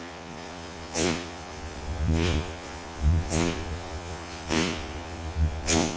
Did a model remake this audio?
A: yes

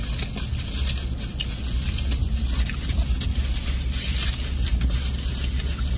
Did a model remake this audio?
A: no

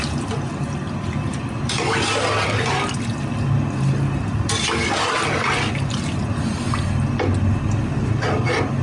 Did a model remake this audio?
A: no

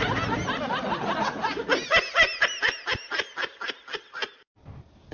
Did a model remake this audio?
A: no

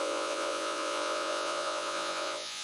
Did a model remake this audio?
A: yes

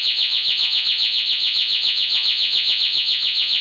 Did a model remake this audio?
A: yes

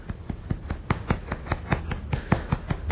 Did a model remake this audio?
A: no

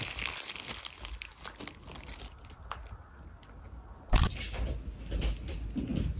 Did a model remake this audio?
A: no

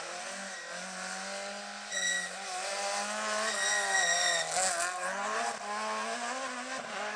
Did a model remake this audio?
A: no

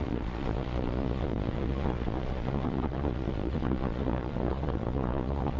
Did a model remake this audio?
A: yes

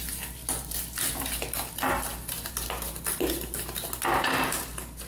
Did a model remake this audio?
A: no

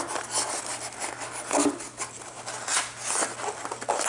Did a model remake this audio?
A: no